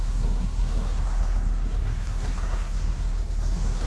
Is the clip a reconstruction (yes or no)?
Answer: yes